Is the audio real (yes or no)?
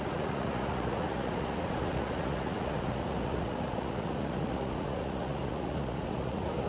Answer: no